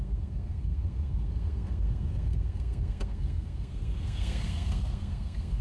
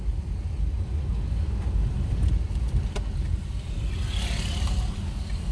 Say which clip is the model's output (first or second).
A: first